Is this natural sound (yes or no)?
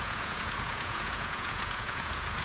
no